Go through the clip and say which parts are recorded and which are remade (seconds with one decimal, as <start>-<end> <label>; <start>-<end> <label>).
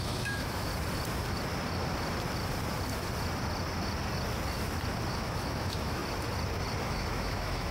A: 0.0-0.7 remade; 0.7-5.1 recorded; 5.1-6.0 remade; 6.0-6.8 recorded; 6.8-7.7 remade